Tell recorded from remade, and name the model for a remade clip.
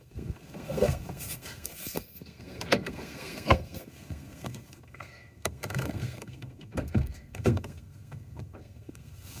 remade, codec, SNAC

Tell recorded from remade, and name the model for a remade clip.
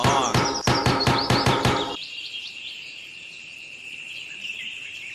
remade, vocoder, BigVGAN v2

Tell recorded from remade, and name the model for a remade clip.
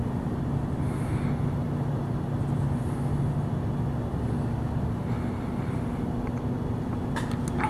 recorded